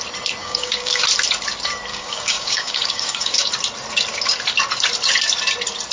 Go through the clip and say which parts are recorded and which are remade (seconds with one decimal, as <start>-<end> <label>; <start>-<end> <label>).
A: 0.0-0.4 recorded; 0.4-1.0 remade; 1.0-1.9 recorded; 1.9-3.5 remade; 3.5-5.9 recorded